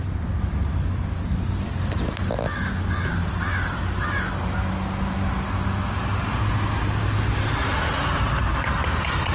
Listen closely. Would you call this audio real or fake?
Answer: real